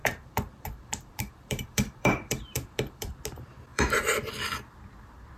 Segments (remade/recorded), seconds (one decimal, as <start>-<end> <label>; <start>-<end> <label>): 0.0-3.2 remade; 3.2-3.7 recorded; 3.7-4.3 remade; 4.3-5.4 recorded